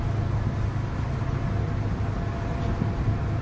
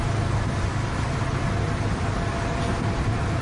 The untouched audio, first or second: first